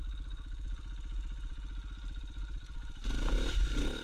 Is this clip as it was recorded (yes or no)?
yes